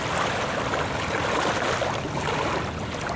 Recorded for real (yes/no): yes